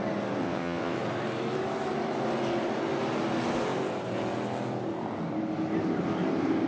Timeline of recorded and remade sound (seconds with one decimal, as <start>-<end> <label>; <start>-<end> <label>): 0.0-0.4 recorded; 0.4-1.0 remade; 1.0-6.7 recorded